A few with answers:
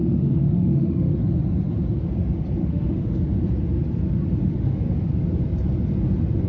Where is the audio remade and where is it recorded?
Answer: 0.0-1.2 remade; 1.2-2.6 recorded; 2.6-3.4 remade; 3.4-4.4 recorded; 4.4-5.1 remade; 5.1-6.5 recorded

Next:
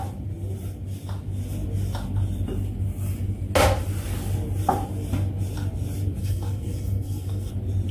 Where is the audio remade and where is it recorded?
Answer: 0.0-6.2 recorded; 6.2-7.5 remade; 7.5-7.9 recorded

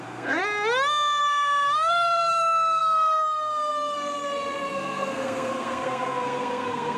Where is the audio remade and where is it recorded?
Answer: 0.0-0.4 remade; 0.4-1.2 recorded; 1.2-7.0 remade

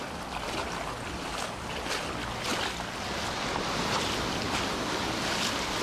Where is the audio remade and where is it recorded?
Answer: 0.0-5.8 recorded

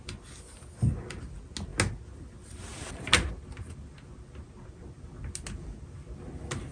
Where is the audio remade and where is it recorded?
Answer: 0.0-6.7 recorded

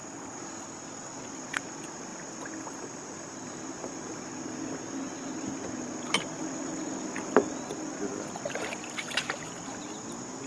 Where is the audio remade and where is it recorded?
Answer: 0.0-10.5 recorded